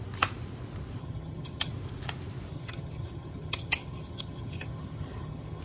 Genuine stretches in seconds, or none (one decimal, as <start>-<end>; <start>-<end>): 0.0-1.0; 1.7-2.5